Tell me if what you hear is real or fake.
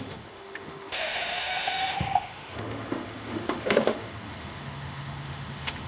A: fake